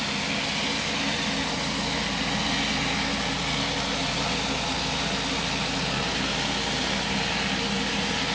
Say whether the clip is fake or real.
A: real